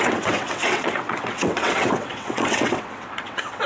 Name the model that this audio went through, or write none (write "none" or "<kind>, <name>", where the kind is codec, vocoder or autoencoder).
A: vocoder, WaveNeXt